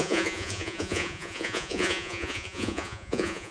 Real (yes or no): no